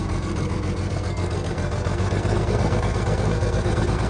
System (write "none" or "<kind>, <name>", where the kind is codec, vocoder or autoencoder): codec, SNAC